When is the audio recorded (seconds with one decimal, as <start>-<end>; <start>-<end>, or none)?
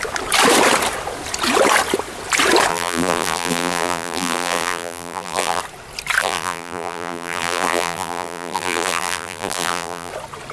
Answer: 0.0-2.7; 5.6-6.2; 10.1-10.5